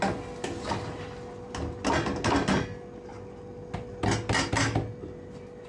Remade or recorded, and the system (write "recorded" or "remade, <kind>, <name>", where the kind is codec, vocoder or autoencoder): recorded